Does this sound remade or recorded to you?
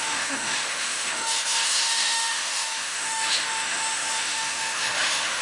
remade